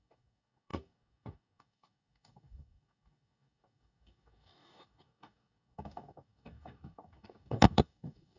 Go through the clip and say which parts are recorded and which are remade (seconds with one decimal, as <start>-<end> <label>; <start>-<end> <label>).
0.0-8.4 remade